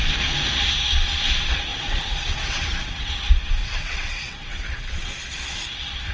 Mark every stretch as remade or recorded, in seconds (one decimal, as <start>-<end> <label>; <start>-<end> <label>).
0.0-1.7 recorded; 1.7-3.1 remade; 3.1-3.6 recorded; 3.6-4.9 remade; 4.9-6.1 recorded